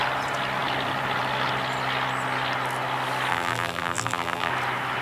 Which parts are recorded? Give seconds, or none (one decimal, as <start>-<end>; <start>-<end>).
0.0-3.3; 4.5-5.0